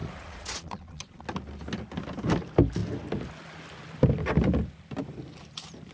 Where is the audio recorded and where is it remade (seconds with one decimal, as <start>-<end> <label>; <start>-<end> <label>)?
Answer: 0.0-1.2 remade; 1.2-5.9 recorded